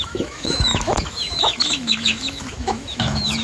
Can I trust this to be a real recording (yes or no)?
no